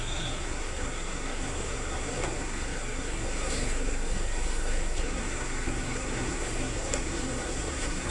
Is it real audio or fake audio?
fake